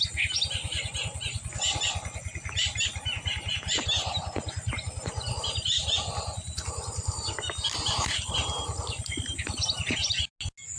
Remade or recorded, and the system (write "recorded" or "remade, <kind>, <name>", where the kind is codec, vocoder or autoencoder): recorded